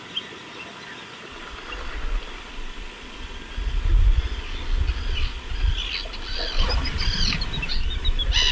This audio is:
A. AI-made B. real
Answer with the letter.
B